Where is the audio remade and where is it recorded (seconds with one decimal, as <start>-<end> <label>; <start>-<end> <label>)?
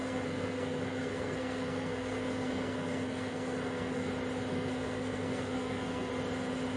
0.0-4.1 remade; 4.1-4.5 recorded; 4.5-6.1 remade; 6.1-6.8 recorded